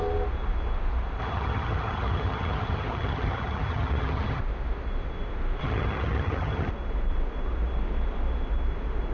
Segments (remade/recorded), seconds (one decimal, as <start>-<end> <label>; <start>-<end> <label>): 0.0-1.2 recorded; 1.2-4.4 remade; 4.4-5.6 recorded; 5.6-6.7 remade; 6.7-9.1 recorded